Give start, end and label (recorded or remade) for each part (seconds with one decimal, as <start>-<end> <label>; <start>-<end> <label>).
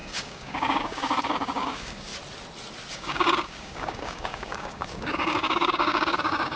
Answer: 0.0-2.1 remade; 2.1-2.9 recorded; 2.9-6.6 remade